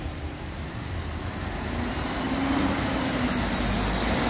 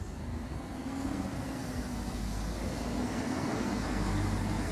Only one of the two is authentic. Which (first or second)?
first